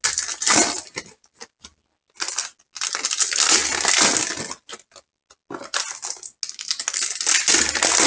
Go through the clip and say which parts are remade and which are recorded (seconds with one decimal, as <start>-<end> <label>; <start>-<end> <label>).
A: 0.0-8.1 recorded